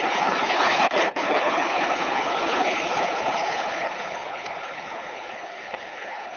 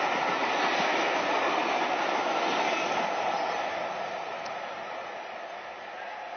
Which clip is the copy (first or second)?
first